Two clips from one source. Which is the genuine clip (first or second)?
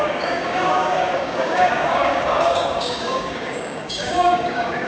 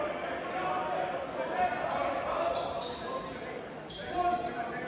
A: second